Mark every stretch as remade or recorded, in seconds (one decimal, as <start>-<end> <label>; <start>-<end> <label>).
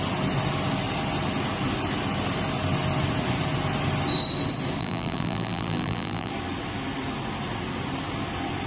0.0-4.8 recorded; 4.8-6.3 remade; 6.3-8.7 recorded